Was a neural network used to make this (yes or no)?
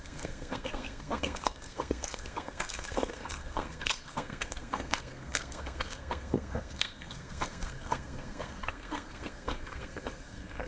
yes